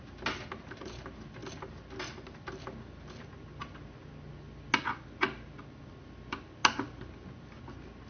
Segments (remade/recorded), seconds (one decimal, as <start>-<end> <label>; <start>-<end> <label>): 0.0-8.1 recorded